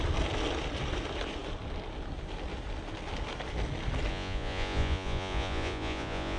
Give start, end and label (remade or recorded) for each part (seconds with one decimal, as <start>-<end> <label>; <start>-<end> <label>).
0.0-4.1 recorded; 4.1-6.4 remade